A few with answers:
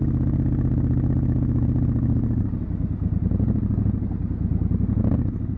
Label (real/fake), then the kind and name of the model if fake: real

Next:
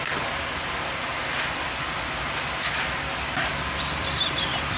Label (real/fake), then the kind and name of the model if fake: real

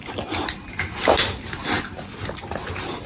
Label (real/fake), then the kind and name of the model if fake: real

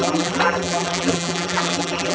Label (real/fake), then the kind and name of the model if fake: fake, vocoder, BigVGAN v2